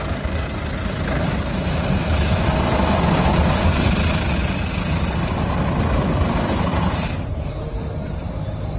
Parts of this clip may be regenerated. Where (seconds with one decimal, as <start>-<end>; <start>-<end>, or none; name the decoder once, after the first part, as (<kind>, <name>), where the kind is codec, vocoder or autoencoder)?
6.7-8.8 (vocoder, BigVGAN v2)